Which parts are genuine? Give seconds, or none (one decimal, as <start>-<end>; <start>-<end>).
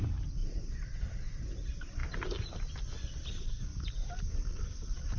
none